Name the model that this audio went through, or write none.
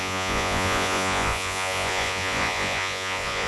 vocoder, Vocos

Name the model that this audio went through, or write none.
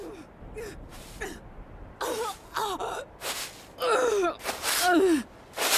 none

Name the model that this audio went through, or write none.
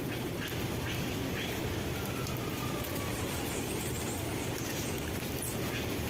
none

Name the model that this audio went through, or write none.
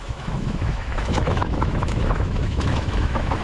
autoencoder, DAC-VAE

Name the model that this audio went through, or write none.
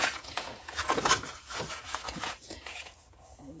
vocoder, Vocos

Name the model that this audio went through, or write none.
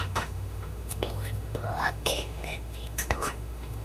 autoencoder, DAC-VAE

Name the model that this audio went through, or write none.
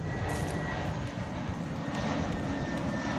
none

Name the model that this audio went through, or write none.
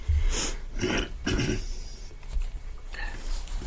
none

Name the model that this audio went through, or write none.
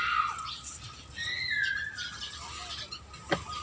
none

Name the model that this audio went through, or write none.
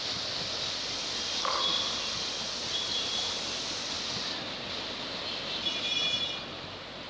none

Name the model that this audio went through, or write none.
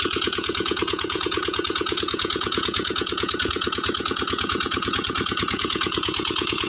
vocoder, Vocos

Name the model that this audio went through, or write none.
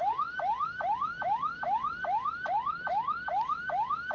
none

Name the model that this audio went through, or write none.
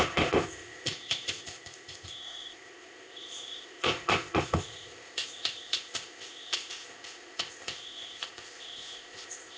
codec, ZipCodec